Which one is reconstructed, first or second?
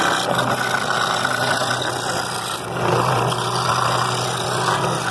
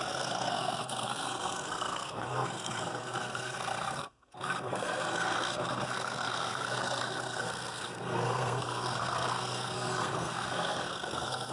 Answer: second